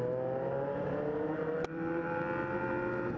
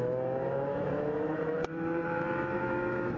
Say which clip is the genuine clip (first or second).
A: first